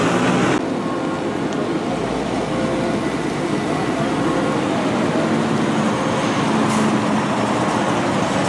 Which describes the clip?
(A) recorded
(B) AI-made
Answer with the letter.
A